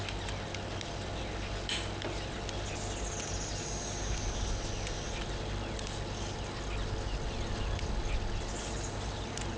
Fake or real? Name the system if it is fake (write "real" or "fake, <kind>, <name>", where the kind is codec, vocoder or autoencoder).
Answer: real